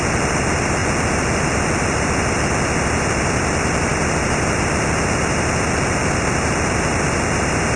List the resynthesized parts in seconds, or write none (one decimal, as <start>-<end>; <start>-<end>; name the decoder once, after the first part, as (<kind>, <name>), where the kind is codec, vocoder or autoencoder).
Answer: none